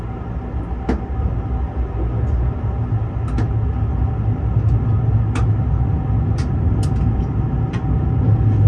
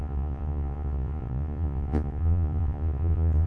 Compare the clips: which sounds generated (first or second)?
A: second